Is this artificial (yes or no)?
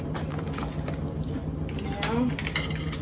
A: no